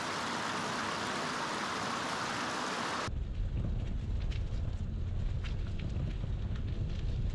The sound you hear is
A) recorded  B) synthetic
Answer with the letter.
A